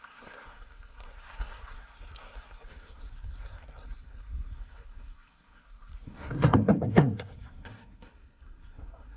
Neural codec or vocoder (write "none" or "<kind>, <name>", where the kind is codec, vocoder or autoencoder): codec, SNAC